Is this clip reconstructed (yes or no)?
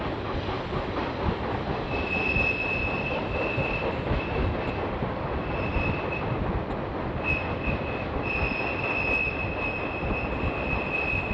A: no